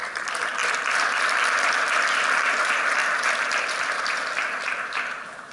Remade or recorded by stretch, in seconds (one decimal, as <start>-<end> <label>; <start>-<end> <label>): 0.0-0.6 remade; 0.6-1.2 recorded; 1.2-3.0 remade; 3.0-3.7 recorded; 3.7-5.5 remade